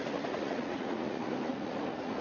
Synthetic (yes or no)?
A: yes